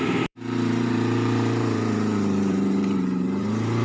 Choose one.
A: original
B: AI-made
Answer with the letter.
B